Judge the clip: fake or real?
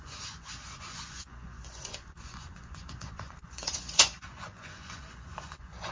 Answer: fake